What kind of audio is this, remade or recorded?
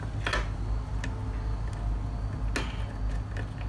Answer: recorded